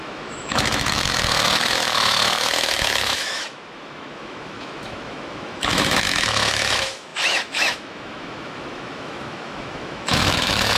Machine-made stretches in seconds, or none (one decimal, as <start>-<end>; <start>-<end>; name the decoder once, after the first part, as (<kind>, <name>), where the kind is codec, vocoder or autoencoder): 0.0-10.8 (autoencoder, DAC-VAE)